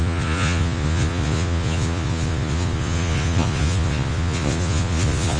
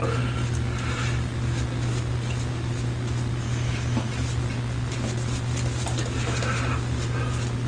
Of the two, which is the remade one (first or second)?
first